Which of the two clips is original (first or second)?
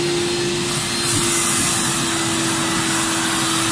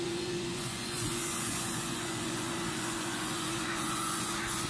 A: first